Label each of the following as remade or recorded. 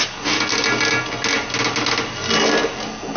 recorded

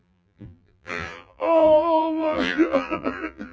remade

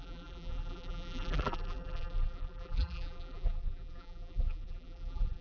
remade